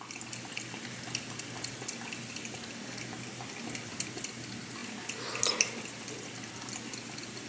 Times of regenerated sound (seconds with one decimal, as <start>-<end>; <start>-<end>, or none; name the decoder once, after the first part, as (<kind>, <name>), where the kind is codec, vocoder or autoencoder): none

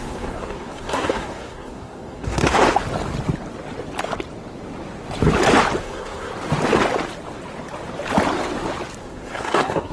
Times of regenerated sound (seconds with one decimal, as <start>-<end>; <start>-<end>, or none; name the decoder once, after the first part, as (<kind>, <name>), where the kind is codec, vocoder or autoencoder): 0.0-2.6 (codec, SNAC); 5.8-6.3; 9.0-9.9